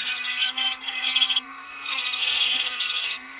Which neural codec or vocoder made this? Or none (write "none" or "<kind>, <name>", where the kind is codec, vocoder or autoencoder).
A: codec, SNAC